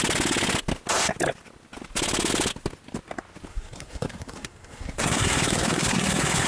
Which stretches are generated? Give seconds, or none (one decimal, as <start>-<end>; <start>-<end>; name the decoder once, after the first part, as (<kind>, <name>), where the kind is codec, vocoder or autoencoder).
3.5-6.5 (codec, SNAC)